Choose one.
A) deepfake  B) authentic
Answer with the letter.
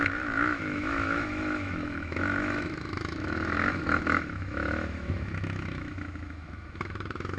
A